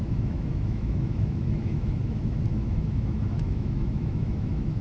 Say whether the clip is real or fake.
fake